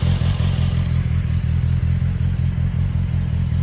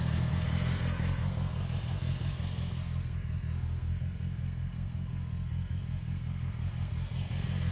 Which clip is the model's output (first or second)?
second